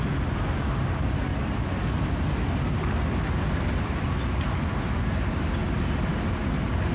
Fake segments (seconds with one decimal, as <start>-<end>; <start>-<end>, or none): none